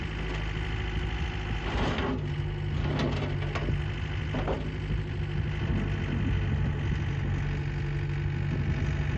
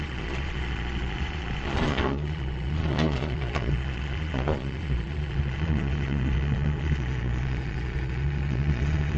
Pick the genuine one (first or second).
first